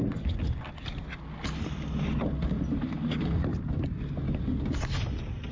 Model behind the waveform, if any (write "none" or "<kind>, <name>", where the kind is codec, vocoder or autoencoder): none